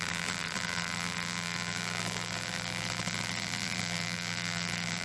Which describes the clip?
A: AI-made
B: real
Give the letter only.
A